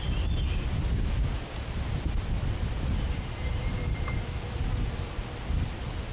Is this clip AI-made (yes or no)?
no